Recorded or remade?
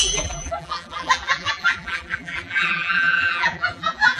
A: remade